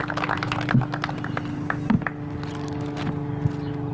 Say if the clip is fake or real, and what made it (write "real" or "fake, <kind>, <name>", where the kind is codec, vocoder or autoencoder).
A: real